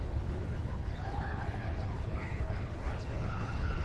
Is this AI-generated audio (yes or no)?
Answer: yes